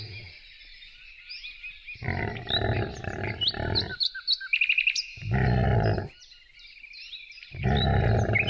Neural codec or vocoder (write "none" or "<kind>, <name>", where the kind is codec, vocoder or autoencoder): none